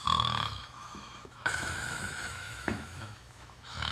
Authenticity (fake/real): fake